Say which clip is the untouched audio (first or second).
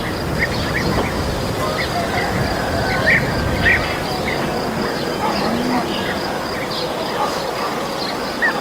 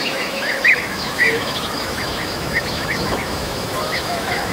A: first